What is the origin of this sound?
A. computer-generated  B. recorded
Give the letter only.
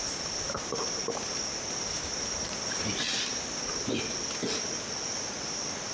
B